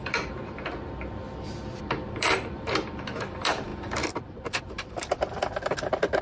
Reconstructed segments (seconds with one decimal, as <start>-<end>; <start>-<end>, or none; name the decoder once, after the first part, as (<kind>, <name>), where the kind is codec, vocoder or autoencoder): 1.8-6.2 (vocoder, BigVGAN v2)